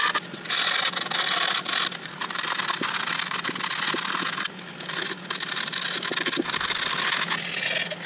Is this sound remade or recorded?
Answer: recorded